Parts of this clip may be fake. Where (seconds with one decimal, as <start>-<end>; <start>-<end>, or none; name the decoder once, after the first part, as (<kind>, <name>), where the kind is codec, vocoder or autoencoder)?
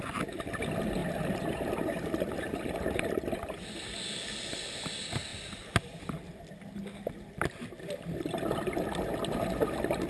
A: 1.0-3.1 (vocoder, BigVGAN v2)